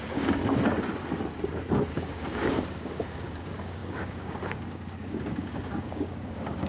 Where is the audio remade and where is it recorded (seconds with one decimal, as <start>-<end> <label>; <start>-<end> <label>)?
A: 0.0-0.4 remade; 0.4-1.9 recorded; 1.9-6.7 remade